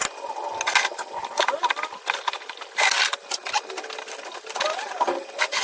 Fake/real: real